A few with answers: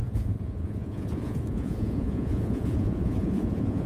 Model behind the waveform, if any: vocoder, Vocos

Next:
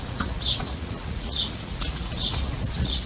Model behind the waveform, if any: vocoder, Vocos